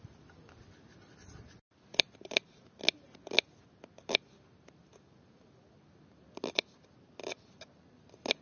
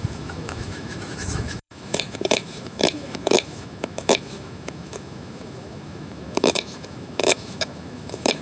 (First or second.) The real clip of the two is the first